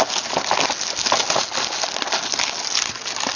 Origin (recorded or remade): recorded